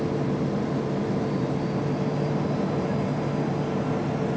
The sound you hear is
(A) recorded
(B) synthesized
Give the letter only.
A